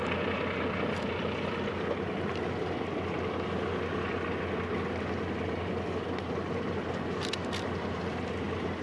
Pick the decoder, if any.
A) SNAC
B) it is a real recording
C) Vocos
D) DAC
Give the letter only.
B